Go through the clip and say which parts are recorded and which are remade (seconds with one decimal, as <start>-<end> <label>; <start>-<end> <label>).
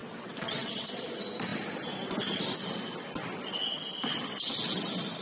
0.0-0.7 remade; 0.7-5.2 recorded